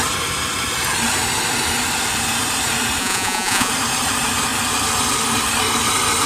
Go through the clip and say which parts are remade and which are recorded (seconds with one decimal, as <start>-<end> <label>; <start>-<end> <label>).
0.0-3.0 recorded; 3.0-3.7 remade; 3.7-6.3 recorded